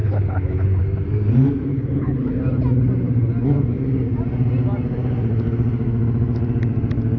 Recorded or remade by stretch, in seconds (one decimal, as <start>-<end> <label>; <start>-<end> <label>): 0.0-0.8 remade; 0.8-1.7 recorded; 1.7-2.3 remade; 2.3-7.2 recorded